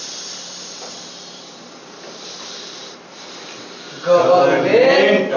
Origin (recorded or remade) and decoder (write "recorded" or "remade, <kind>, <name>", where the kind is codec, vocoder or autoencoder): remade, vocoder, BigVGAN v2